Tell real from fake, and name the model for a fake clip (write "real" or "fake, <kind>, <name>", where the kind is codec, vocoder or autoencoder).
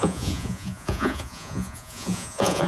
fake, vocoder, Vocos